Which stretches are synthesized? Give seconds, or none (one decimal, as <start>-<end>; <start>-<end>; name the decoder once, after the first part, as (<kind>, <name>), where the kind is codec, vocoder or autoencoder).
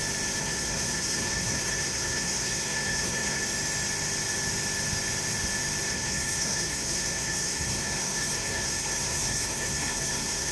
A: 0.4-3.4 (codec, SNAC); 5.9-10.5